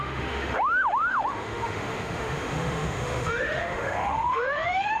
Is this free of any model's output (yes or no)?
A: no